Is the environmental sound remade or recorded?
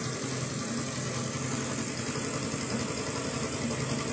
recorded